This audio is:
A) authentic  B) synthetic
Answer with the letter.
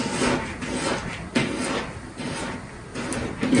A